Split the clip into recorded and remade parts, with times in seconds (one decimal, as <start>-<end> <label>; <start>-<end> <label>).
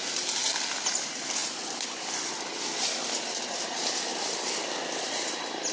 0.0-5.7 recorded